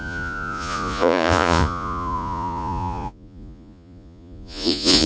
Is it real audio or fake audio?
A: fake